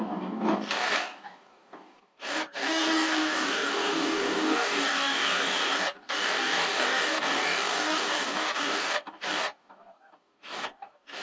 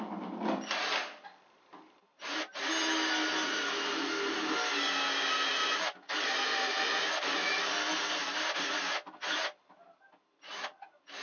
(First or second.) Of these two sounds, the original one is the second